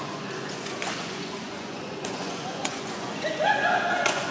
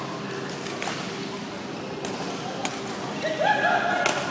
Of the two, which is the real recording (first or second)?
second